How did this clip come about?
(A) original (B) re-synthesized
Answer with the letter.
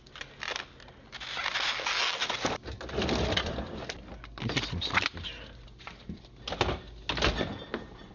A